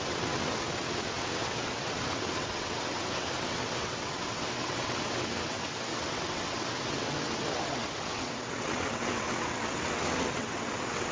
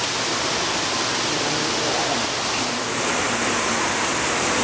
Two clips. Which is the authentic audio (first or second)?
second